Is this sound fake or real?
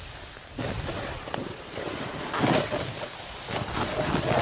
real